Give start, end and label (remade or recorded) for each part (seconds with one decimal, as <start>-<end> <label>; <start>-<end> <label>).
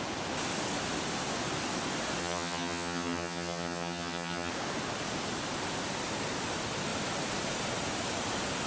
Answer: 0.0-2.2 recorded; 2.2-4.5 remade; 4.5-8.7 recorded